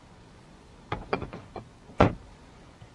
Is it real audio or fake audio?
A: fake